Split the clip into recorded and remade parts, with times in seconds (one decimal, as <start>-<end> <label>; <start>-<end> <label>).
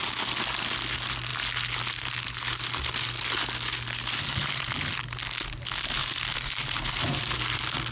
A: 0.0-6.0 recorded; 6.0-7.2 remade; 7.2-7.9 recorded